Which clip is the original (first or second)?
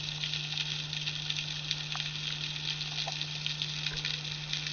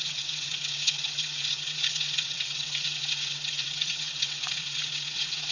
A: first